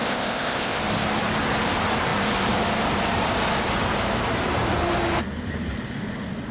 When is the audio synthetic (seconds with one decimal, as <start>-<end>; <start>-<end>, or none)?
0.0-0.8